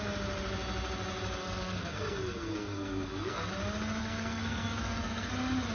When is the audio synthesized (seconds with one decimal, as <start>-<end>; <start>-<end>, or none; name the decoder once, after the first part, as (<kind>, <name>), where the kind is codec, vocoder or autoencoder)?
1.4-3.5 (codec, SNAC); 4.0-5.3